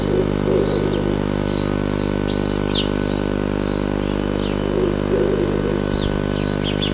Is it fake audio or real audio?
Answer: real